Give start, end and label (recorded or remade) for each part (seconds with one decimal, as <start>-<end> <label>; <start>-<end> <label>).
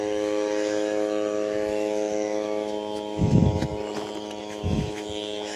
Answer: 0.0-3.7 remade; 3.7-4.4 recorded; 4.4-5.6 remade